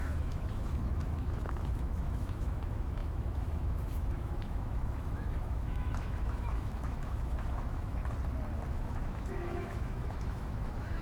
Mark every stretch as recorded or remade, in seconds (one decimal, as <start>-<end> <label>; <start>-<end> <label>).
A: 0.0-8.0 remade; 8.0-8.7 recorded; 8.7-11.0 remade